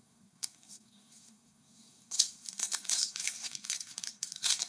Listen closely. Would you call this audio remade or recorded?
remade